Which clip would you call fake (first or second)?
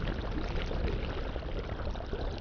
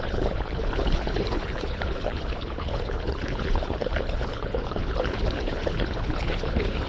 second